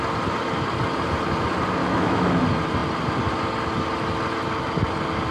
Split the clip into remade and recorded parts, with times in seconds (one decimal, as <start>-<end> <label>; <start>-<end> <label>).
0.0-1.8 recorded; 1.8-2.4 remade; 2.4-5.3 recorded